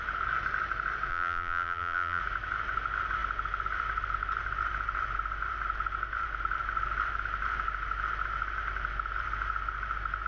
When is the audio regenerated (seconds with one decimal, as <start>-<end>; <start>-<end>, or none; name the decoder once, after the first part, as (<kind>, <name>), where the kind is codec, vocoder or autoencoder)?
1.1-2.2 (vocoder, BigVGAN v2)